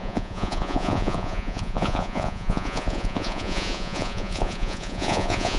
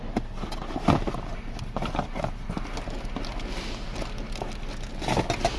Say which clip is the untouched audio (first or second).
second